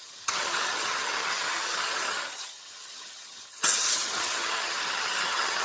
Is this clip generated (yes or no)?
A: yes